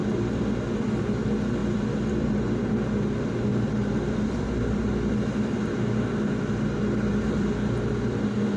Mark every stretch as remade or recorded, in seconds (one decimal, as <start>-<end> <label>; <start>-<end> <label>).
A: 0.0-1.6 recorded; 1.6-2.3 remade; 2.3-3.5 recorded; 3.5-4.9 remade; 4.9-7.1 recorded; 7.1-7.9 remade; 7.9-8.6 recorded